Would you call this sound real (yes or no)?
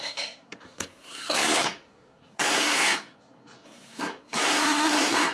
no